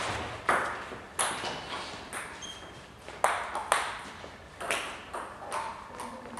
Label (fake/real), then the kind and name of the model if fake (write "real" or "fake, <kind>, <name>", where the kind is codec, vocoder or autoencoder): real